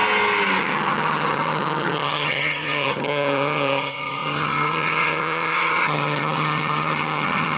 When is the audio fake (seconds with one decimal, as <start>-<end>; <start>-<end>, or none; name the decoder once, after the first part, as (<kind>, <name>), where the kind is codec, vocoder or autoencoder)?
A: 0.6-7.6 (vocoder, HiFi-GAN)